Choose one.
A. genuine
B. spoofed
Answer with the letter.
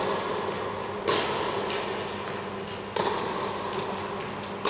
A